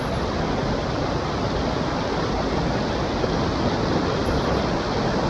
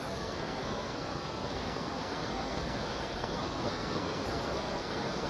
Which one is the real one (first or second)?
first